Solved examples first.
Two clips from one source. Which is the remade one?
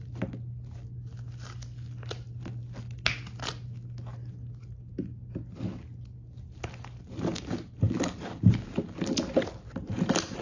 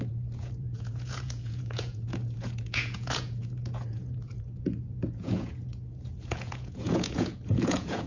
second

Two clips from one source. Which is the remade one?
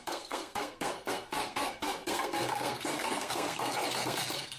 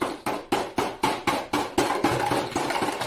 first